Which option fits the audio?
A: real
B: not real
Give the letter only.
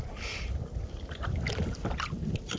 A